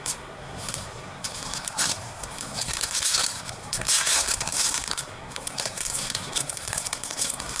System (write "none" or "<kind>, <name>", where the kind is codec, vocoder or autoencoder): codec, SNAC